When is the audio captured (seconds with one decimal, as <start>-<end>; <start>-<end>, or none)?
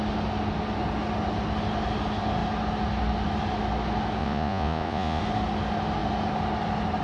0.0-4.2; 5.2-7.0